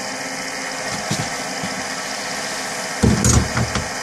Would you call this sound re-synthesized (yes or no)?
no